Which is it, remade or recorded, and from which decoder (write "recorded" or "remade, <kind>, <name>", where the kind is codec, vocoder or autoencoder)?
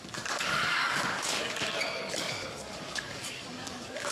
remade, codec, DAC